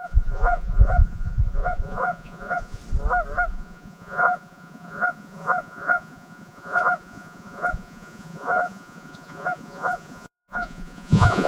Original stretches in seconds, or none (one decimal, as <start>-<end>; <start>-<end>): 2.8-3.5